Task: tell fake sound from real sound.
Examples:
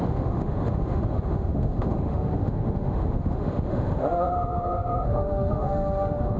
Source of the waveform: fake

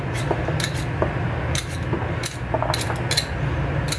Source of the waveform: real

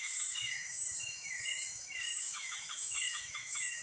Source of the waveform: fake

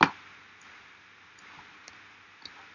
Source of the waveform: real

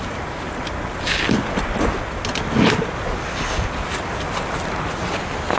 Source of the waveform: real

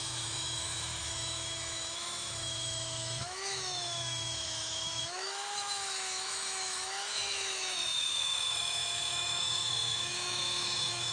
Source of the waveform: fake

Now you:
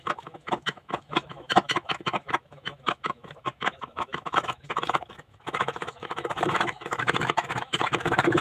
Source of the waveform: fake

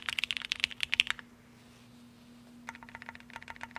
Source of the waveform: real